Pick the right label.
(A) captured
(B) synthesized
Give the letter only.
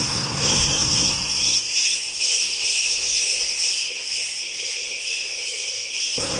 B